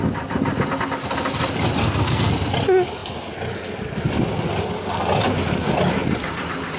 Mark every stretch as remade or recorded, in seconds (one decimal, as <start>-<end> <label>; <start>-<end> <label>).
0.0-1.8 recorded; 1.8-2.3 remade; 2.3-6.8 recorded